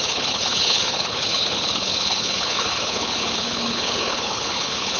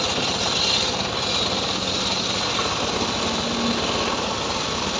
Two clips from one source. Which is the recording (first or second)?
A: second